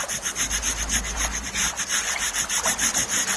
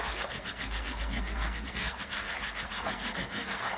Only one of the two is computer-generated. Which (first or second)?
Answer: second